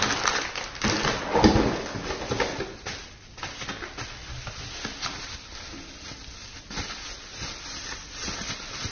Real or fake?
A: real